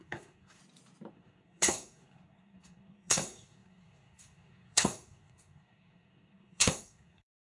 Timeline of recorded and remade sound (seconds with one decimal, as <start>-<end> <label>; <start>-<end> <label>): 0.0-0.6 remade; 0.6-1.1 recorded; 1.1-7.5 remade